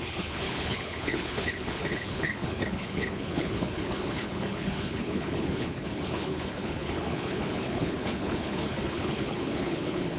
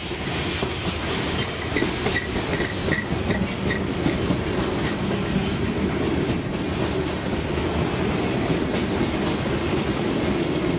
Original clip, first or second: second